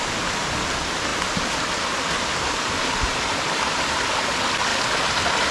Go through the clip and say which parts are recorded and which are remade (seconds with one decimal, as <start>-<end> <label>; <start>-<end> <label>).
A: 0.0-5.5 recorded